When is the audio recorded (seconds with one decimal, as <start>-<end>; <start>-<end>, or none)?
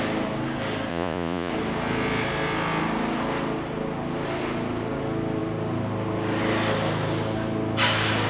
0.0-0.9; 1.5-8.3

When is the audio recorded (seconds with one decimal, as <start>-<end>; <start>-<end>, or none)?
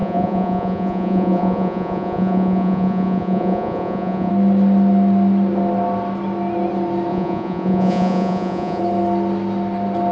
4.3-7.1; 8.8-10.1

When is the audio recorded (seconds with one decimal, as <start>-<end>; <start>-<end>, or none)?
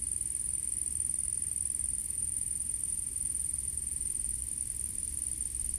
0.0-2.0; 4.4-5.8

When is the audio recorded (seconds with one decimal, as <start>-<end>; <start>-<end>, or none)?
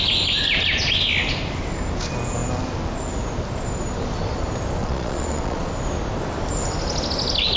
0.0-4.8; 5.7-7.6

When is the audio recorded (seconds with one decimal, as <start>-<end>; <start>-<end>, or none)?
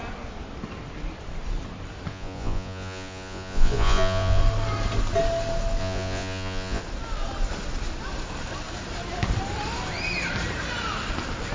0.0-2.1; 4.4-5.8; 6.8-11.5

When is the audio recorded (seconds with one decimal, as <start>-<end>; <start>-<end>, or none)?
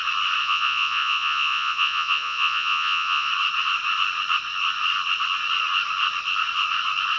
0.0-0.4; 3.3-7.2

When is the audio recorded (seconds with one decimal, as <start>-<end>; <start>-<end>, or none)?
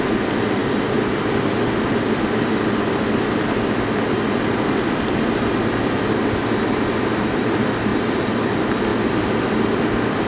0.0-10.3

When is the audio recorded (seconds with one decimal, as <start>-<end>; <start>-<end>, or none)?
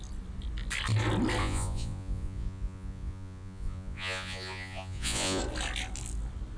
0.0-1.4; 5.4-6.6